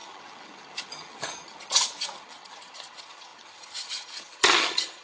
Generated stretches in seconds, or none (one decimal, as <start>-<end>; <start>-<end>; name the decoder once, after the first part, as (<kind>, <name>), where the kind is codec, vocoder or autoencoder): 0.0-5.0 (vocoder, HiFi-GAN)